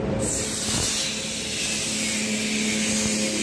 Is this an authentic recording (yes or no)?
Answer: yes